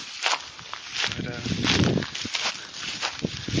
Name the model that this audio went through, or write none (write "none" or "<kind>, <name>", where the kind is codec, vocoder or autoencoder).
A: none